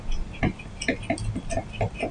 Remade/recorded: recorded